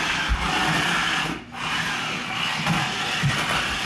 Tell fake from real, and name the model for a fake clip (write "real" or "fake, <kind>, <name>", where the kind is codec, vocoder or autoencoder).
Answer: real